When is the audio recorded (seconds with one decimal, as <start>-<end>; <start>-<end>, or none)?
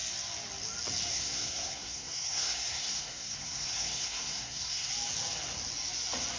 0.0-1.1; 4.9-6.4